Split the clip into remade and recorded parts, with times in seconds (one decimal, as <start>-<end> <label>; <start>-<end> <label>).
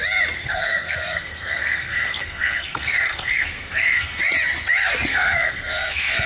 0.0-0.4 recorded; 0.4-4.2 remade; 4.2-5.1 recorded; 5.1-6.3 remade